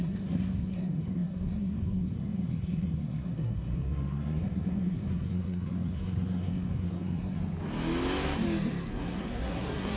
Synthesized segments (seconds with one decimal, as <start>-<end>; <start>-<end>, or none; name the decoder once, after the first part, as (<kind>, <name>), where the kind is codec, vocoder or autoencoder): 0.0-7.4 (codec, SNAC); 8.9-10.0